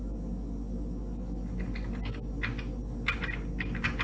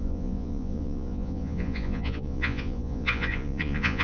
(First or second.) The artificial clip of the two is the second